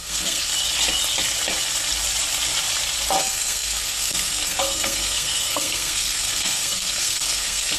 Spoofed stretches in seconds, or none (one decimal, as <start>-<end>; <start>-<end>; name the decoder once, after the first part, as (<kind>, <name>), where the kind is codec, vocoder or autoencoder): 0.0-0.5 (codec, SNAC); 3.2-7.8